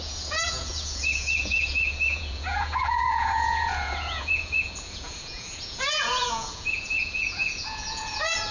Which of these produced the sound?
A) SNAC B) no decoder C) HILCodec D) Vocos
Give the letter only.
D